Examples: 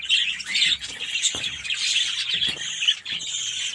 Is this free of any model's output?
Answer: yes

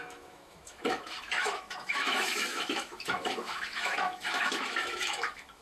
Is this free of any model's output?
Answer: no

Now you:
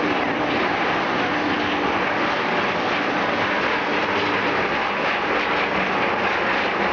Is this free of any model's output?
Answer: yes